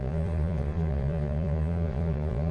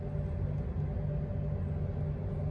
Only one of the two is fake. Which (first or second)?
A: first